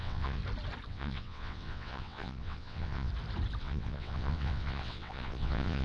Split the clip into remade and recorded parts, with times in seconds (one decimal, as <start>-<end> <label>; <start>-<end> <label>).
0.0-0.4 remade; 0.4-0.9 recorded; 0.9-3.1 remade; 3.1-3.6 recorded; 3.6-5.8 remade